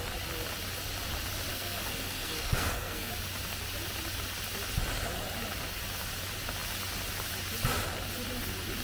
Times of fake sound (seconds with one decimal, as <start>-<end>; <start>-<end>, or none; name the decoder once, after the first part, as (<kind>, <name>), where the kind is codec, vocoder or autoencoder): 1.5-3.1 (codec, SNAC)